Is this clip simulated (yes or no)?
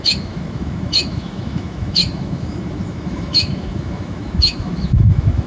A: yes